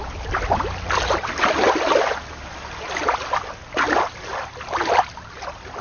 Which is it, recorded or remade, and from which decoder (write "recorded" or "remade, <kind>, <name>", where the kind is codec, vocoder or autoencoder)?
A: recorded